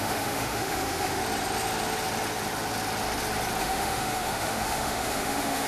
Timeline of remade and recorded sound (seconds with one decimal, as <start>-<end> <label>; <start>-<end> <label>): 0.0-1.2 remade; 1.2-3.6 recorded; 3.6-5.7 remade